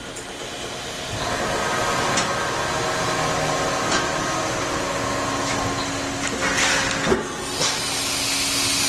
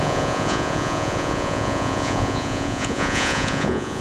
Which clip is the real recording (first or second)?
first